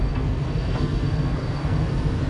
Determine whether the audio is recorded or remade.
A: remade